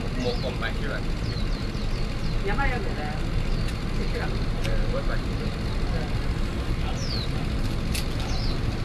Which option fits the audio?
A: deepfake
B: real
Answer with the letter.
B